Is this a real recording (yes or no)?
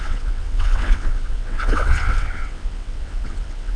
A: no